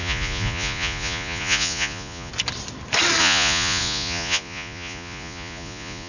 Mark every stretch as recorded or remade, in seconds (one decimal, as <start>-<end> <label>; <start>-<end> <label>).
0.0-2.3 remade; 2.3-3.2 recorded; 3.2-6.1 remade